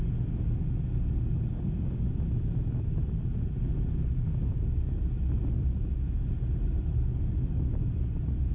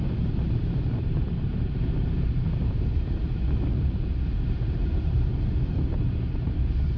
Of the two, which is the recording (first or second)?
first